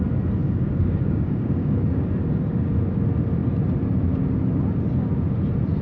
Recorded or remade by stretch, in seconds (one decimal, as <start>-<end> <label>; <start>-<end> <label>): 0.0-0.4 recorded; 0.4-2.0 remade; 2.0-5.8 recorded

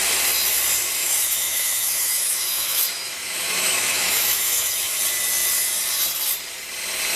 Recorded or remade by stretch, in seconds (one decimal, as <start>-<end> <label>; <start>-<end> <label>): 0.0-1.0 recorded; 1.0-5.0 remade; 5.0-7.2 recorded

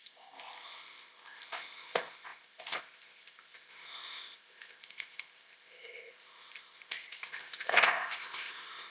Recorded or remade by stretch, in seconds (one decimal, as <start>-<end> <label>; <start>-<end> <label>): 0.0-8.9 remade

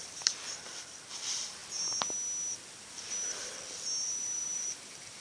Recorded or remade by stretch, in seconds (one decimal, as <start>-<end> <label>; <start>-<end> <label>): 0.0-4.2 recorded; 4.2-4.8 remade; 4.8-5.2 recorded